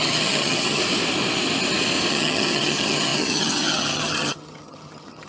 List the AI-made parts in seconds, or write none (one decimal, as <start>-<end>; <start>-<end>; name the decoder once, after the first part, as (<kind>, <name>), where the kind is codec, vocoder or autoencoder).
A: 0.0-0.8 (vocoder, HiFi-GAN); 2.1-5.3

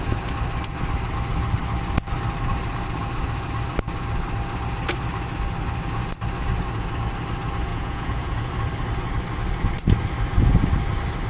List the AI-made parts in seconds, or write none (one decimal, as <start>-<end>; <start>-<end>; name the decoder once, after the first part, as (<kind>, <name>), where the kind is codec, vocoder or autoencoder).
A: 7.7-8.5 (vocoder, Vocos)

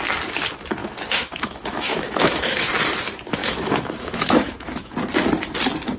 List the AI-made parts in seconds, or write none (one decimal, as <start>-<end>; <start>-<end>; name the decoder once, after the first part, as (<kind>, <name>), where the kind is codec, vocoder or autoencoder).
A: 0.8-2.7 (autoencoder, DAC-VAE); 3.4-4.9

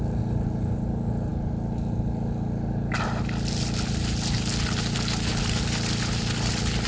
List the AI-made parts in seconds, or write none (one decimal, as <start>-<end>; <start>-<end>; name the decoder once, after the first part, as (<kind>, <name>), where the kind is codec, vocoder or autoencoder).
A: none

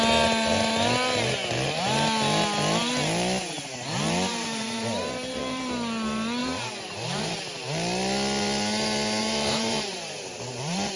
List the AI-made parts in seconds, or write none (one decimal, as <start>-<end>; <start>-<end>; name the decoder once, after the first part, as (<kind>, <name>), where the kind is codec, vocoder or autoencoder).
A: 4.3-5.6 (vocoder, BigVGAN v2); 6.4-7.3; 9.2-11.0

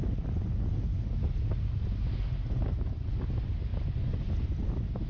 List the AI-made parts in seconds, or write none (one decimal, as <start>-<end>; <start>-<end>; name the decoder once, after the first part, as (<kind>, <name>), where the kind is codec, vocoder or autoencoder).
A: none

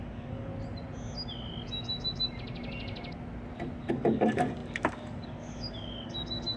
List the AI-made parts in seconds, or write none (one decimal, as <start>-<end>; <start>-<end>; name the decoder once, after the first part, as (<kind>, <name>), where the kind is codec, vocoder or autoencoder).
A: 0.0-0.5 (codec, DAC); 3.9-6.6